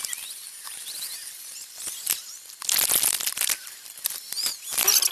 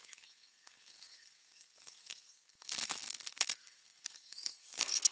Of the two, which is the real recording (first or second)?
first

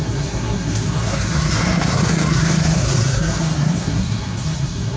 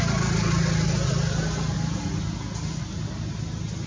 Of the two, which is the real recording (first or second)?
second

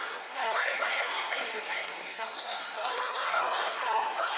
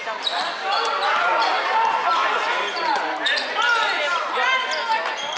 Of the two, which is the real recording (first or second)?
second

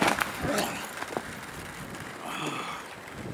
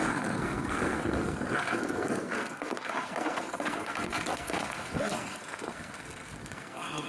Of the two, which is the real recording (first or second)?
first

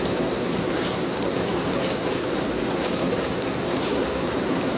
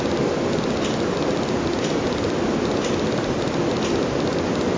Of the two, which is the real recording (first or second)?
second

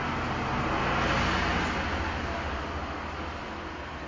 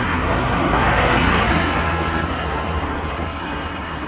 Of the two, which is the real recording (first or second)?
first